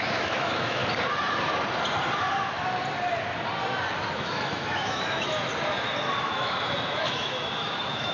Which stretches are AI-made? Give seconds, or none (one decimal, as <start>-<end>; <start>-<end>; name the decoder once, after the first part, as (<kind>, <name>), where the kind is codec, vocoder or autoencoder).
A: 0.0-0.8 (autoencoder, DAC-VAE); 4.0-5.5; 6.2-8.1